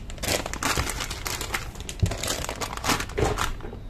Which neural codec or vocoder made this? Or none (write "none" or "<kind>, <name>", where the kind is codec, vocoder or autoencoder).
none